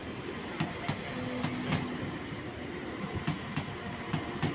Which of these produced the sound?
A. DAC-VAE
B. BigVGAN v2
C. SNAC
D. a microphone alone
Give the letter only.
D